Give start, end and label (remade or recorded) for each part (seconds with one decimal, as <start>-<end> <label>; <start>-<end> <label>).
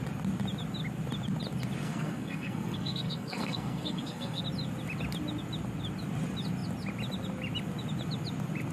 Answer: 0.0-1.8 recorded; 1.8-4.4 remade; 4.4-8.7 recorded